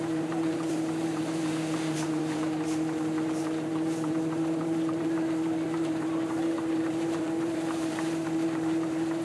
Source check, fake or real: fake